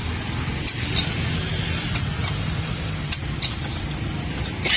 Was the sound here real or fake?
real